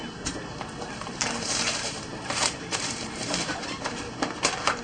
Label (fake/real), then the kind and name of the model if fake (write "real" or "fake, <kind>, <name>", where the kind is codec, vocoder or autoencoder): fake, vocoder, BigVGAN v2